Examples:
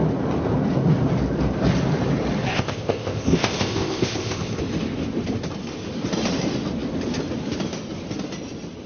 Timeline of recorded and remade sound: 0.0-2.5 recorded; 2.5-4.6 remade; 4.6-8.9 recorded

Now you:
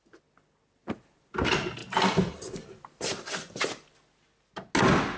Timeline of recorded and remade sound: 0.0-5.2 recorded

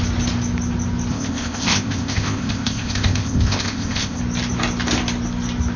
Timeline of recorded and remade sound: 0.0-1.1 recorded; 1.1-4.2 remade; 4.2-5.8 recorded

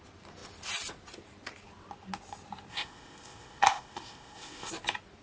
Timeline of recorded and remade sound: 0.0-2.7 recorded; 2.7-4.7 remade; 4.7-5.2 recorded

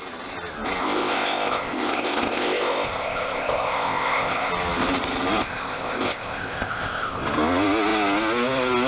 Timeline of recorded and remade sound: 0.0-0.8 recorded; 0.8-4.5 remade; 4.5-5.4 recorded; 5.4-7.2 remade; 7.2-8.9 recorded

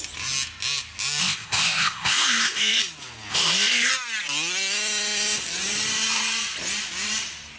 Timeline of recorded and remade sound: 0.0-1.2 recorded; 1.2-2.8 remade; 2.8-3.3 recorded; 3.3-3.9 remade; 3.9-7.6 recorded